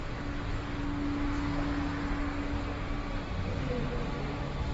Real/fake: real